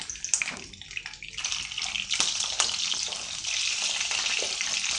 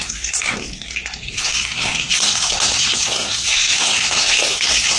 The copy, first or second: second